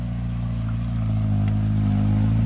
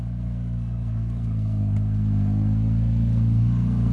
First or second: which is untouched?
first